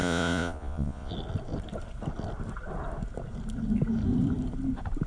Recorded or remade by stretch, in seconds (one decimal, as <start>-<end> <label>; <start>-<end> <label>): 0.0-1.1 remade; 1.1-5.1 recorded